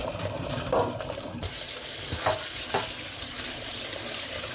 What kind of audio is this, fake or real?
fake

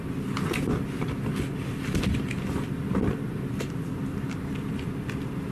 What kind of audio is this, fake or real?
fake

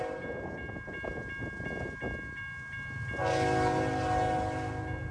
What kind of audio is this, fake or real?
real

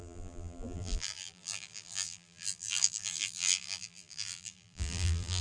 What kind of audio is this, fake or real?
fake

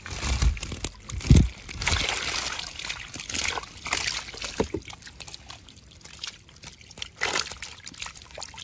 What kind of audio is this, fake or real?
real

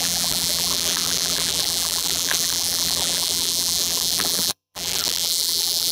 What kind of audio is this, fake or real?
fake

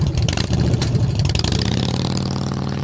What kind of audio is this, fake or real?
fake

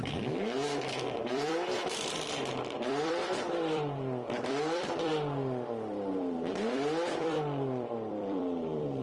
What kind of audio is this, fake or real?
fake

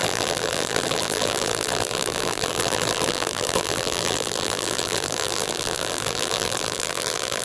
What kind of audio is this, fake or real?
fake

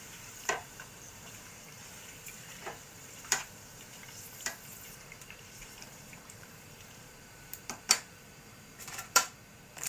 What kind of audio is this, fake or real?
fake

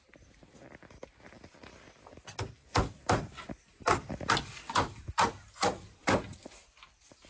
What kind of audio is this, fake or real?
fake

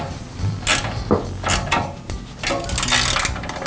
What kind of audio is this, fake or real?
real